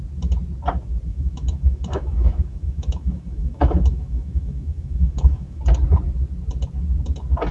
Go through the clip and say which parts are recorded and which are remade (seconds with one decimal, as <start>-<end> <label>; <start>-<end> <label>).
0.0-1.1 recorded; 1.1-5.6 remade; 5.6-7.5 recorded